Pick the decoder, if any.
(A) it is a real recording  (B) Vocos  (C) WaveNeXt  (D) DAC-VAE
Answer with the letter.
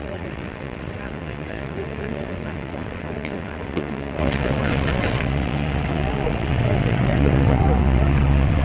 C